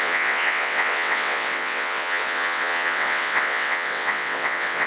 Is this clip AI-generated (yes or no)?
yes